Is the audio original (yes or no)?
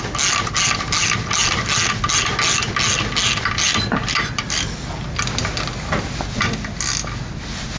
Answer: yes